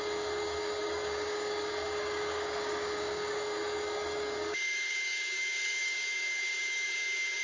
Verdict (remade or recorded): remade